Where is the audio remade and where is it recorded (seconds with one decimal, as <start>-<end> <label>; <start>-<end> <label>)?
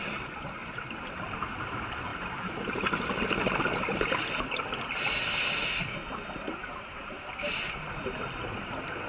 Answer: 0.0-0.6 recorded; 0.6-1.5 remade; 1.5-2.1 recorded; 2.1-3.1 remade; 3.1-9.1 recorded